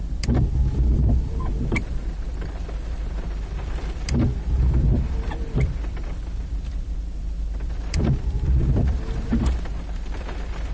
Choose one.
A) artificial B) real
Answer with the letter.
A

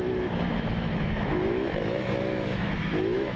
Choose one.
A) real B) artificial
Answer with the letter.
B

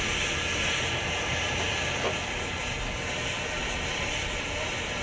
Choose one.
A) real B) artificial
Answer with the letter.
A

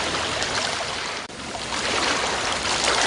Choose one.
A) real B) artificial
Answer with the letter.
A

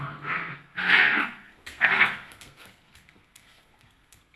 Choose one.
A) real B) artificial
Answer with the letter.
B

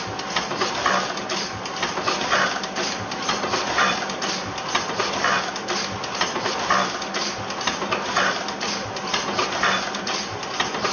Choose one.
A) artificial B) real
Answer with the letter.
B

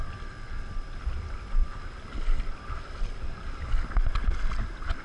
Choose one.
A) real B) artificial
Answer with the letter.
A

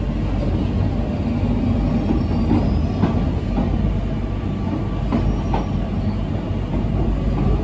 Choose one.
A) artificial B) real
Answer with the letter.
B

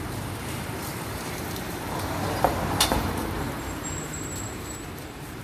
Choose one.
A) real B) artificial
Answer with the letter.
B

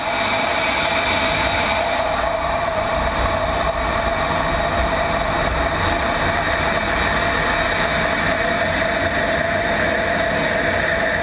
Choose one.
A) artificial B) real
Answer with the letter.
B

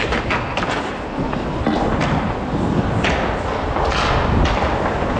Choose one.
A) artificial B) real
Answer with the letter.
B